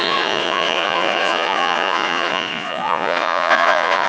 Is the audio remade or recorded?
remade